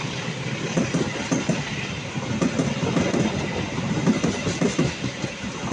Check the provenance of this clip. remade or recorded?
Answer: recorded